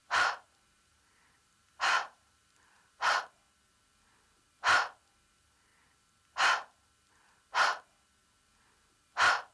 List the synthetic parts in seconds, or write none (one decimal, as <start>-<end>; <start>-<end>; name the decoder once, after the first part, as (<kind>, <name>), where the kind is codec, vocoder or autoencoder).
0.0-3.2 (vocoder, BigVGAN v2)

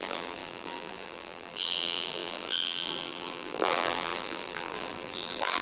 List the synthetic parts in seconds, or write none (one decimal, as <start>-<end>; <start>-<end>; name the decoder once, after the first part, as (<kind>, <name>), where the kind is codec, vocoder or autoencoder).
0.0-5.6 (vocoder, BigVGAN v2)